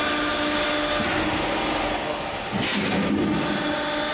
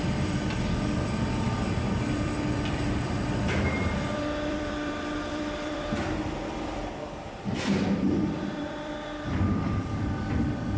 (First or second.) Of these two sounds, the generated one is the second